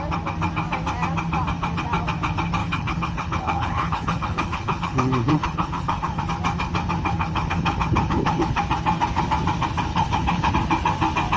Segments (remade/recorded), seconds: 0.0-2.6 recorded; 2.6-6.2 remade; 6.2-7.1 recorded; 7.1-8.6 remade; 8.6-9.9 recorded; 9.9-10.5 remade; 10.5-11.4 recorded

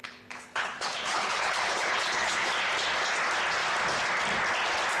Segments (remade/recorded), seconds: 0.0-2.5 remade; 2.5-5.0 recorded

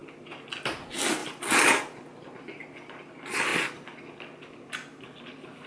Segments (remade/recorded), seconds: 0.0-5.7 recorded

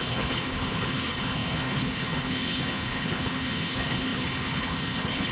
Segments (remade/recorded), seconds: 0.0-5.3 remade